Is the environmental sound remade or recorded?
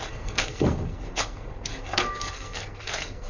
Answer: remade